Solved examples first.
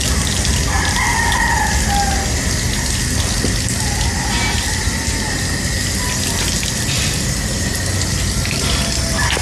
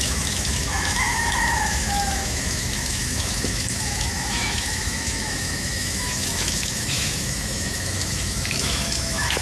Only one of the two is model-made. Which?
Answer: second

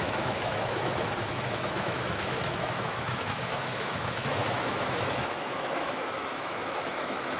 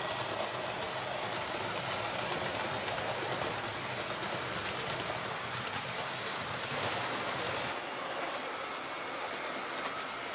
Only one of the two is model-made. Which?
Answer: first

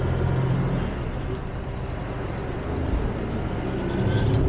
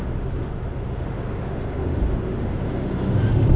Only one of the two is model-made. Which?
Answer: second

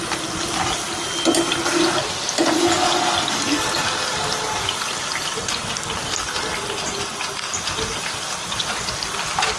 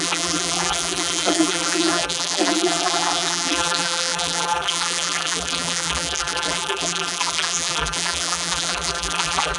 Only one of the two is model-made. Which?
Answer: second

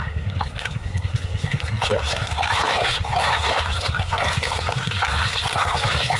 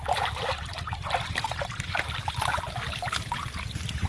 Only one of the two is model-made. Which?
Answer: first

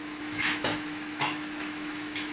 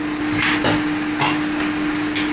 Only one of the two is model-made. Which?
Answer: first